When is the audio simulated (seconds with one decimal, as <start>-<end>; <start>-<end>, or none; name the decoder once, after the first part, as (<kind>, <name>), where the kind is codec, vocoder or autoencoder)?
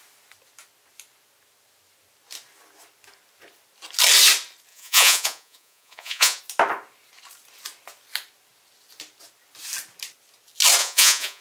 4.7-6.4 (vocoder, Vocos); 10.8-11.4